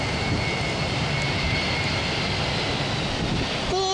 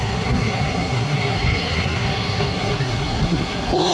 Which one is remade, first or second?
second